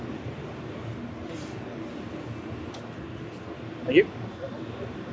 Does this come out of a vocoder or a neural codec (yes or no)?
no